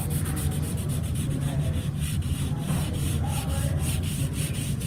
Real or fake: fake